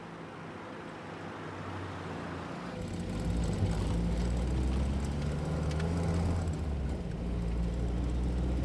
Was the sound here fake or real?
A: real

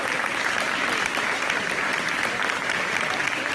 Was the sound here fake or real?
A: real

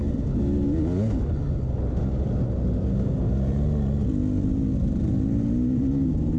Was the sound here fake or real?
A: real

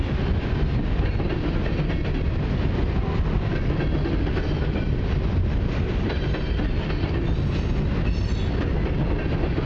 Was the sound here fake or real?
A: real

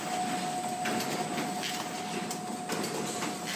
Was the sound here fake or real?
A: real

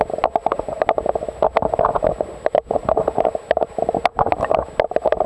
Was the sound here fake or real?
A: real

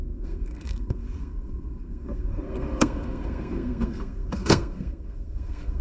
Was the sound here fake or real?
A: fake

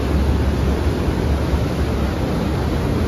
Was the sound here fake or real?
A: real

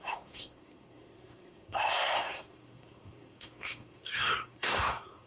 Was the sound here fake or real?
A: fake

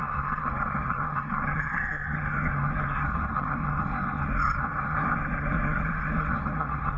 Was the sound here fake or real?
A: fake